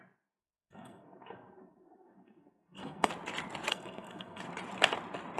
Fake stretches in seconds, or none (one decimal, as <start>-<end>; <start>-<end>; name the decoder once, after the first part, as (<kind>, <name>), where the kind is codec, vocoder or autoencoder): 0.4-3.1 (codec, SNAC); 3.7-4.4